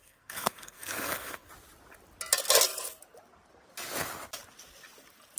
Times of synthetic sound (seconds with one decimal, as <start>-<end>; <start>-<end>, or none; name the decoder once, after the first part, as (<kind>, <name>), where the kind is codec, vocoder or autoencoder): 0.0-1.5 (codec, SNAC)